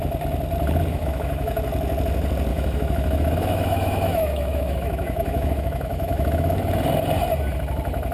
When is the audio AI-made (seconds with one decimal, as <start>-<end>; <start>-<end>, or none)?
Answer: 0.9-1.6; 2.5-6.6